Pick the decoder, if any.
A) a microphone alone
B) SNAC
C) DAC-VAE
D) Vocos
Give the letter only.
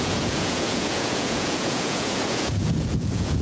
D